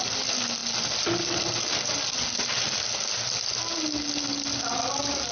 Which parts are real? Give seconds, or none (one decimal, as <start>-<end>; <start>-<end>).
0.0-5.3